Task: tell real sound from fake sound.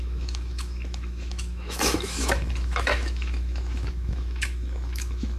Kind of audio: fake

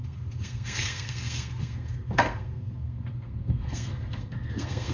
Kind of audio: fake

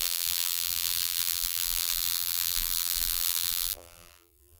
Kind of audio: fake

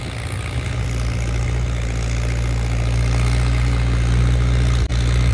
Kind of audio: real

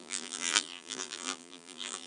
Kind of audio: fake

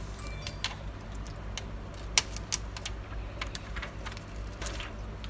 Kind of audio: real